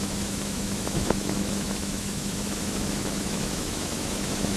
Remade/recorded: remade